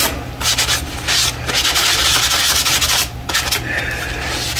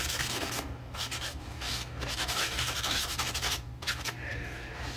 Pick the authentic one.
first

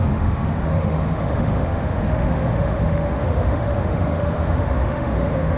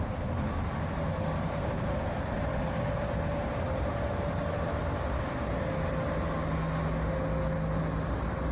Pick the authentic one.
second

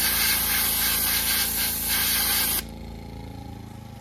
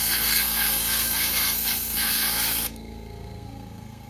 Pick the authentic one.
first